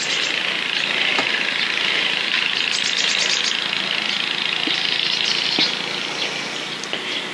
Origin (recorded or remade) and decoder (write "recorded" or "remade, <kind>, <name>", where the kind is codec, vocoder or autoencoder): recorded